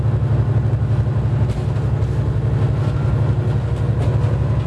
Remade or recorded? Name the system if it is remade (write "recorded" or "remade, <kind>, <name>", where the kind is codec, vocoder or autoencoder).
recorded